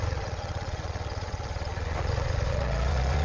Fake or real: fake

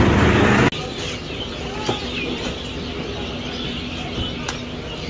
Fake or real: real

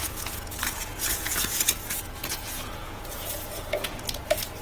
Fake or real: fake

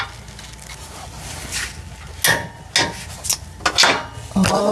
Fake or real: real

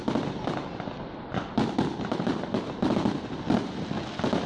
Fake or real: real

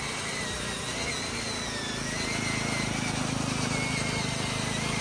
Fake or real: real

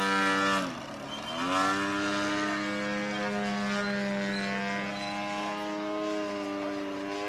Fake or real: real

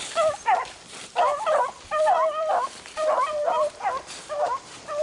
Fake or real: real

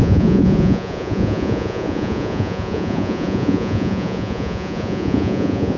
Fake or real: fake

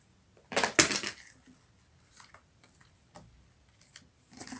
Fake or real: real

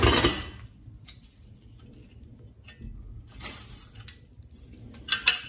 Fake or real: real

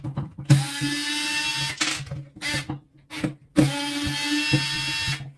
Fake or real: real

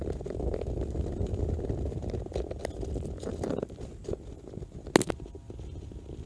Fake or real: real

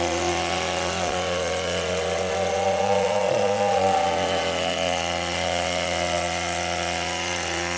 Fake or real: fake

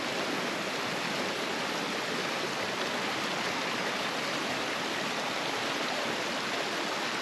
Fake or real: real